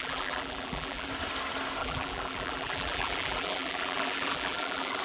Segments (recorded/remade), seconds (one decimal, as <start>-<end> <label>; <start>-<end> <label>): 0.0-1.1 remade; 1.1-1.8 recorded; 1.8-5.0 remade